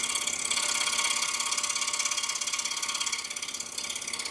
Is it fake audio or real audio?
real